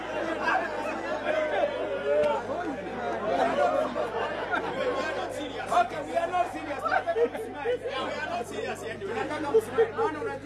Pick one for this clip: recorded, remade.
recorded